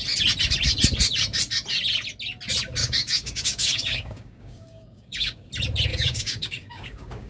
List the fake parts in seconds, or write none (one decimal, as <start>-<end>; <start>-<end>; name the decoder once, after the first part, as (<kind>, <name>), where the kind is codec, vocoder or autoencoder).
2.8-5.5 (codec, DAC); 5.9-7.3